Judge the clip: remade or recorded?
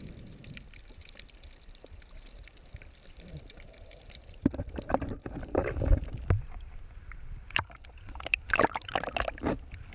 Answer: remade